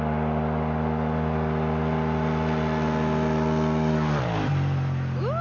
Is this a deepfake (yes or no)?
no